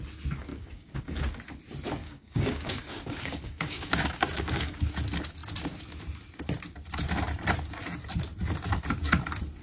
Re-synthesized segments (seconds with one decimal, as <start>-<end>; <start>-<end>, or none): 0.5-1.0; 2.0-4.8